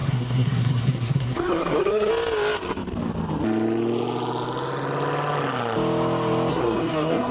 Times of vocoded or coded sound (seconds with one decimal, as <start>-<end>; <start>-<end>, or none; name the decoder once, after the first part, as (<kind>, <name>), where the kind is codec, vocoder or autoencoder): 0.0-2.1 (codec, SNAC); 6.5-7.3